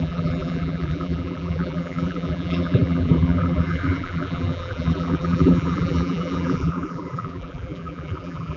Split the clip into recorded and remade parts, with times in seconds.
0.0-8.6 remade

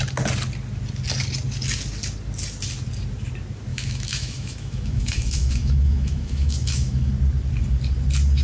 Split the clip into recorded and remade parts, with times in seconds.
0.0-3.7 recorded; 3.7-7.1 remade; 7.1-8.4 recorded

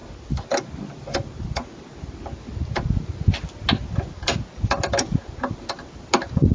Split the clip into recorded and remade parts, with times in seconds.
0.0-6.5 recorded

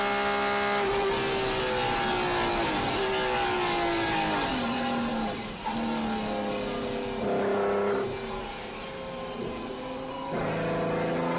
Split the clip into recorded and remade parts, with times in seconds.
0.0-11.4 recorded

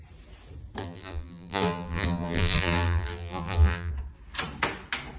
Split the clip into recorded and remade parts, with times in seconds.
0.0-0.8 recorded; 0.8-3.9 remade; 3.9-5.2 recorded

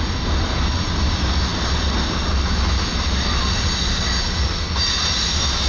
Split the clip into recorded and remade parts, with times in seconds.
0.0-5.7 recorded

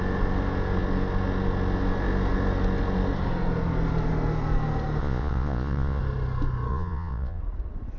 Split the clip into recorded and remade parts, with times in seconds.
0.0-5.0 recorded; 5.0-6.0 remade; 6.0-6.7 recorded; 6.7-7.4 remade; 7.4-8.0 recorded